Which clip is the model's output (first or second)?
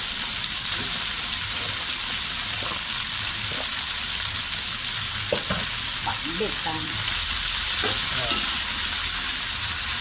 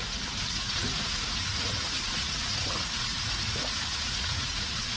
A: second